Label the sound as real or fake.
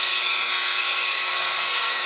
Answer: fake